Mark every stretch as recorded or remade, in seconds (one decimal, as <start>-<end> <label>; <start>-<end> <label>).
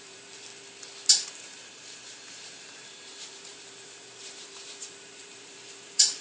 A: 0.0-0.5 remade; 0.5-1.3 recorded; 1.3-6.2 remade